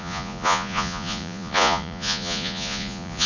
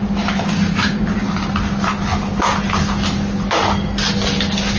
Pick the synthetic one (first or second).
first